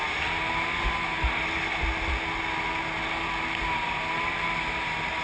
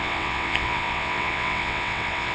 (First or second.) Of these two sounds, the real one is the first